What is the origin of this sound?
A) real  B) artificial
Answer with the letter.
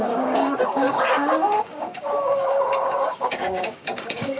B